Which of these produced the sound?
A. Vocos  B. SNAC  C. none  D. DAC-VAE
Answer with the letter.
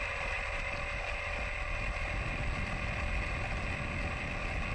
C